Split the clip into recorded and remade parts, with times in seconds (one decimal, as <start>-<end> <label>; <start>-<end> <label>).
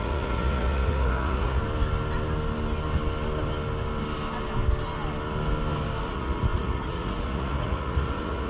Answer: 0.0-1.6 remade; 1.6-6.0 recorded; 6.0-8.5 remade